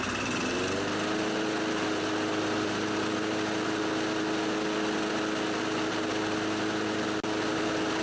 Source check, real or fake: real